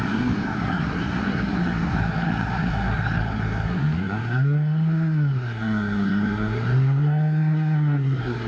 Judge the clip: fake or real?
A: fake